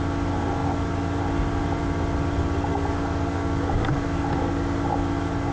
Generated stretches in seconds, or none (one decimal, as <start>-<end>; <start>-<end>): 2.7-4.2